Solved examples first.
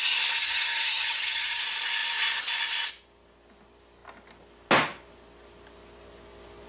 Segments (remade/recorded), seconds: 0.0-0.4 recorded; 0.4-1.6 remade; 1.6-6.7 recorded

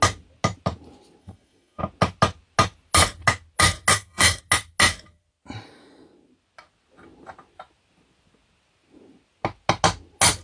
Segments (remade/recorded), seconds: 0.0-1.2 recorded; 1.2-1.8 remade; 1.8-3.9 recorded; 3.9-4.4 remade; 4.4-10.4 recorded

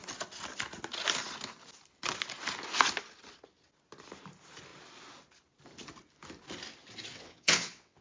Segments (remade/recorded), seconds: 0.0-7.1 recorded; 7.1-8.0 remade